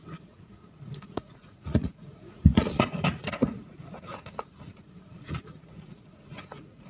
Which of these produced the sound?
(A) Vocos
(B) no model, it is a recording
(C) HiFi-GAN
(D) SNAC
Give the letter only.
A